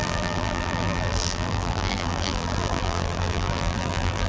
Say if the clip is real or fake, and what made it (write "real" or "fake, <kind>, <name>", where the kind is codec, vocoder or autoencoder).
fake, vocoder, BigVGAN v2